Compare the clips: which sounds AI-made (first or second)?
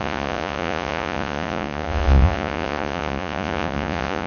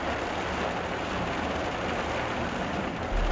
first